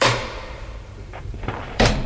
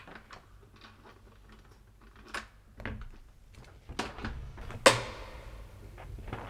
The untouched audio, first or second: second